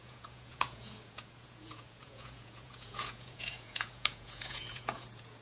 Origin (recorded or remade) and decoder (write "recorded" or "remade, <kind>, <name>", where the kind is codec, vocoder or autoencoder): remade, vocoder, Vocos